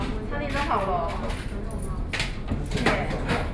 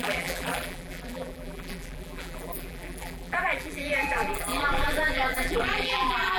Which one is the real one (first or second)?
first